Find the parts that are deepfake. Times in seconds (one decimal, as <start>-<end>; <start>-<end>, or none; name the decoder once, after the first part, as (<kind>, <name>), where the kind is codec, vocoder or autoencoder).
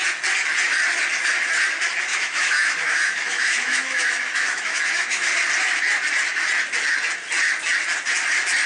2.1-5.3 (autoencoder, DAC-VAE)